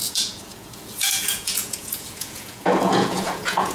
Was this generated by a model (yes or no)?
yes